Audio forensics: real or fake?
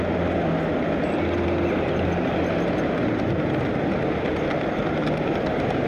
real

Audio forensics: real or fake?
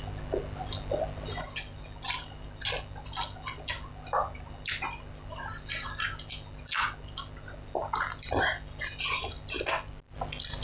real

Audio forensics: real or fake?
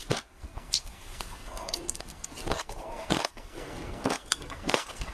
fake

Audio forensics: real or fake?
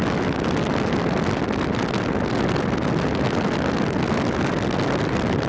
real